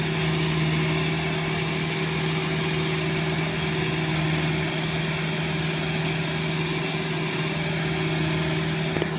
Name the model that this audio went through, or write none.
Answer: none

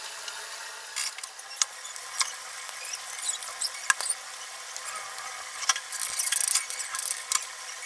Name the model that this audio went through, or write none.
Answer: none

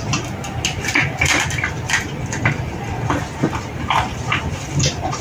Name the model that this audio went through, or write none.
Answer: none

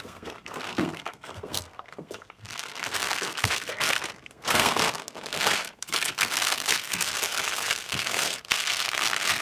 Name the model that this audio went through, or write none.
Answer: codec, SNAC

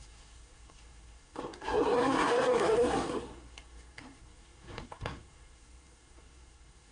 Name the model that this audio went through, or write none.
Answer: codec, SNAC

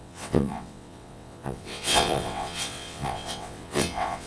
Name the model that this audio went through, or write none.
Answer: vocoder, WaveNeXt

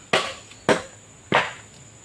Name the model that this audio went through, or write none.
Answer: none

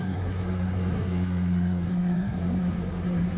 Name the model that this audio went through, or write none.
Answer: codec, SNAC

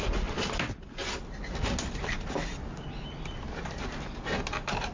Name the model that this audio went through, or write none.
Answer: none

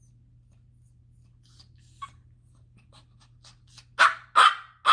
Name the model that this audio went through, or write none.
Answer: none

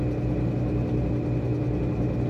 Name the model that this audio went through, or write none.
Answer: none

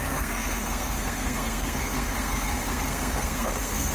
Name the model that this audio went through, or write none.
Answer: codec, SNAC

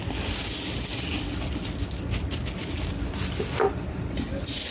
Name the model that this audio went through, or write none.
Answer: none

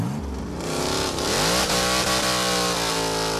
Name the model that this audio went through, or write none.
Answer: none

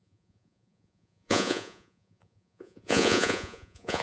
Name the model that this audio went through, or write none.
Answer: vocoder, Vocos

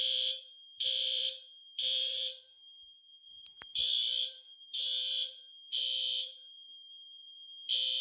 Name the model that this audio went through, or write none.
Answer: vocoder, BigVGAN v2